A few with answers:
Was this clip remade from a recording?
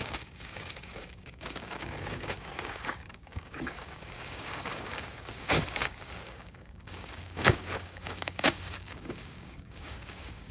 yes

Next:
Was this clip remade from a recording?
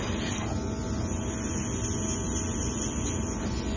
no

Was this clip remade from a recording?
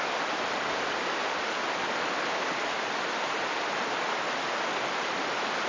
no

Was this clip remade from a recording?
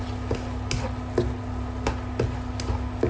no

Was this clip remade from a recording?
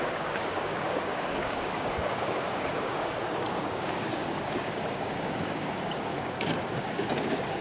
yes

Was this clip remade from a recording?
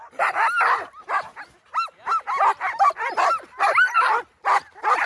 no